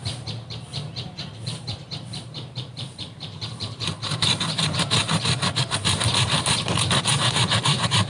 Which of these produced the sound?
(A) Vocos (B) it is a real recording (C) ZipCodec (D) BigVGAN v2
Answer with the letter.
D